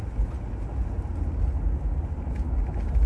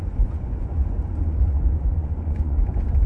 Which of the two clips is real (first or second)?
first